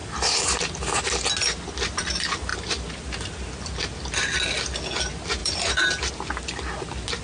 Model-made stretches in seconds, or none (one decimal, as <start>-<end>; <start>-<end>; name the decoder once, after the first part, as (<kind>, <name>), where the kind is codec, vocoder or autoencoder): 0.0-0.6 (vocoder, BigVGAN v2); 2.5-3.0; 5.4-6.1